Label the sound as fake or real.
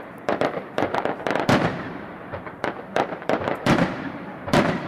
fake